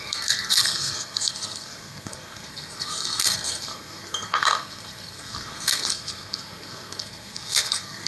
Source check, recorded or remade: remade